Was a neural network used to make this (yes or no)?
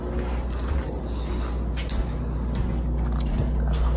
no